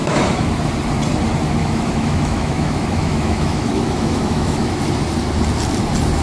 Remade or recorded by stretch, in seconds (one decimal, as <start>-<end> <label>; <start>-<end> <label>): 0.0-0.5 remade; 0.5-1.6 recorded; 1.6-4.8 remade; 4.8-6.2 recorded